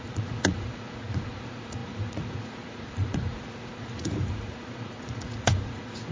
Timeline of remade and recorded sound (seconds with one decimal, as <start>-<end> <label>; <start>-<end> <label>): 0.0-6.1 remade